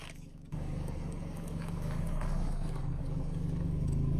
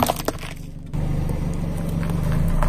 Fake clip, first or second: first